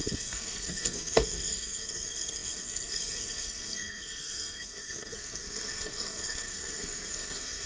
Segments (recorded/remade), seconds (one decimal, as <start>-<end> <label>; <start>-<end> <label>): 0.0-7.7 remade